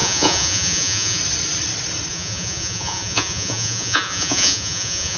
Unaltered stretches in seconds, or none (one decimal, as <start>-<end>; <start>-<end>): 1.2-2.1